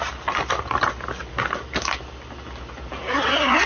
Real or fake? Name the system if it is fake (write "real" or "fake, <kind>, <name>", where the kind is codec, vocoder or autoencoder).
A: real